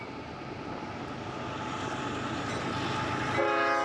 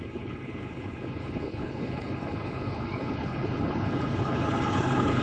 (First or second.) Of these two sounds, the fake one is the second